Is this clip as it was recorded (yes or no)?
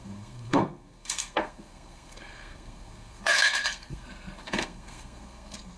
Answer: no